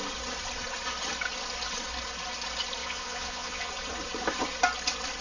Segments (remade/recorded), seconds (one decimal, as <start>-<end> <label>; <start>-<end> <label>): 0.0-2.8 recorded; 2.8-3.7 remade; 3.7-5.2 recorded